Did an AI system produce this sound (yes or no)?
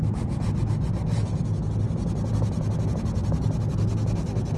no